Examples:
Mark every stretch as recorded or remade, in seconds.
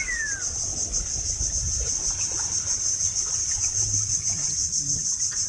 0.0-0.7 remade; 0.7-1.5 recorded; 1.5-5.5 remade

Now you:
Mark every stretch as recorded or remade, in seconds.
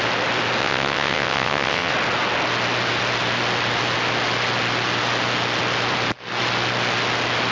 0.0-0.6 recorded; 0.6-1.9 remade; 1.9-7.5 recorded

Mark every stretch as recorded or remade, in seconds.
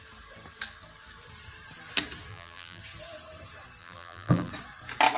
0.0-2.3 recorded; 2.3-2.8 remade; 2.8-3.8 recorded; 3.8-4.5 remade; 4.5-5.2 recorded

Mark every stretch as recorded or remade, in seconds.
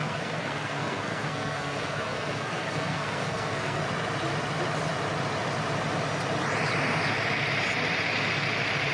0.0-3.8 remade; 3.8-8.9 recorded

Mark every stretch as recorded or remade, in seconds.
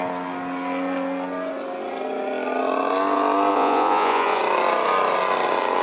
0.0-3.5 recorded; 3.5-4.4 remade; 4.4-5.8 recorded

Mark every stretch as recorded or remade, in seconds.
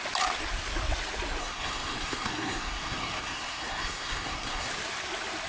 0.0-1.4 recorded; 1.4-4.7 remade; 4.7-5.5 recorded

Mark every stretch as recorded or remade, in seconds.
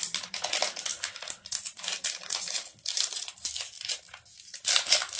0.0-5.2 recorded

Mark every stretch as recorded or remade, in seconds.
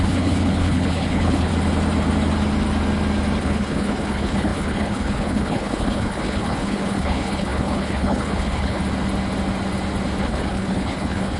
0.0-1.5 remade; 1.5-3.4 recorded; 3.4-8.8 remade; 8.8-10.2 recorded; 10.2-11.4 remade